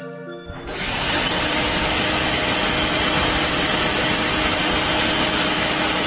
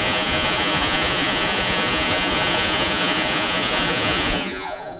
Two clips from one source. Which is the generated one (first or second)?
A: second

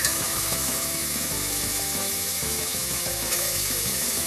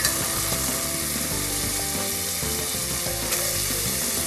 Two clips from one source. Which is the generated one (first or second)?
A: first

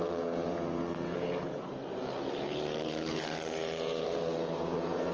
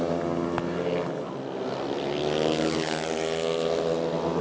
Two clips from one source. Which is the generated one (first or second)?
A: first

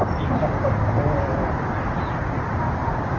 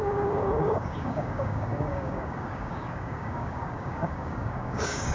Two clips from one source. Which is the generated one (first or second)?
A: second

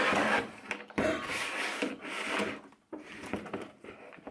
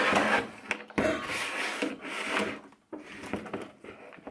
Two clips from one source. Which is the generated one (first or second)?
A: first